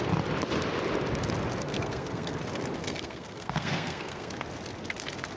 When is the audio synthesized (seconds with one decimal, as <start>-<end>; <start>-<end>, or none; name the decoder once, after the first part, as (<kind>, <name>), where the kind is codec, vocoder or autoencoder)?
1.7-2.4 (codec, SNAC); 2.8-4.3